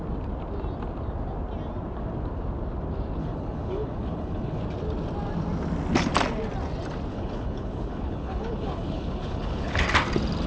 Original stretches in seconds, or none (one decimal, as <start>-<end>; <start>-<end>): 0.0-3.2; 4.6-7.1; 9.8-10.5